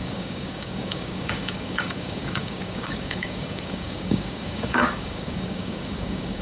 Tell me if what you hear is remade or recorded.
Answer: remade